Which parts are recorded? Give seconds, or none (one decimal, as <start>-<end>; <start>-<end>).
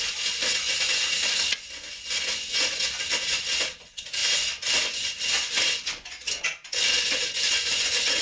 none